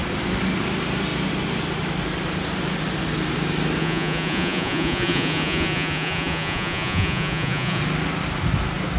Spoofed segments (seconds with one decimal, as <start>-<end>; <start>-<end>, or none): 3.8-7.8